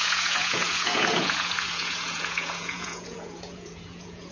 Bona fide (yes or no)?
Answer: no